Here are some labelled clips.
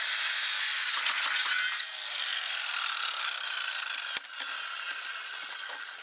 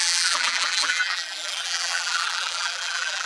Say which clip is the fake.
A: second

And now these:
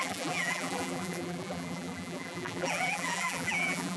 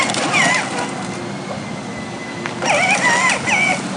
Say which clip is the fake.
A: first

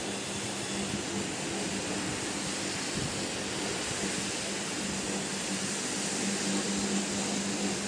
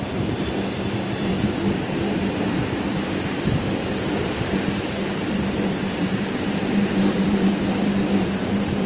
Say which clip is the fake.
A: second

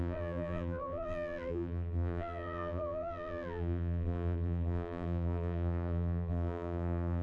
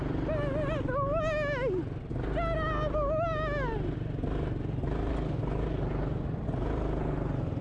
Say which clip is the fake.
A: first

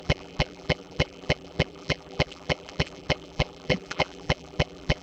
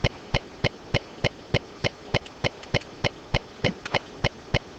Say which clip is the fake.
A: first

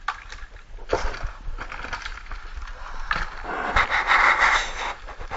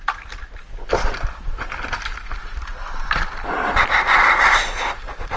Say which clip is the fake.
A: second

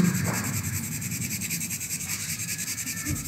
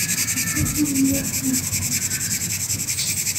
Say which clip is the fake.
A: first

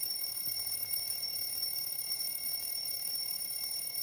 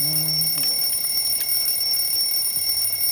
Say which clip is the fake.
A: first